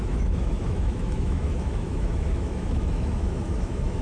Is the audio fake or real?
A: fake